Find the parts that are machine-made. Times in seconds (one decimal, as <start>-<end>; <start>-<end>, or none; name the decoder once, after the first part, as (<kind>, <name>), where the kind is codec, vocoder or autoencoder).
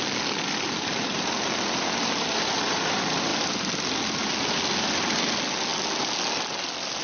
none